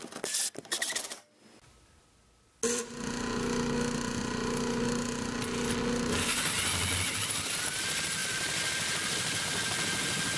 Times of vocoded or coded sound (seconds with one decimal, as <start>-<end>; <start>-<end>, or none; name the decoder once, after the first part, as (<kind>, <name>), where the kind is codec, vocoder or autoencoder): 8.2-9.4 (vocoder, BigVGAN v2)